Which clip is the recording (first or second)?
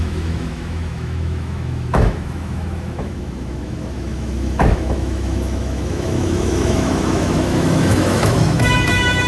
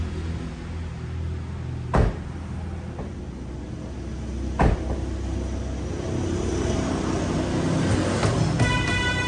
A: second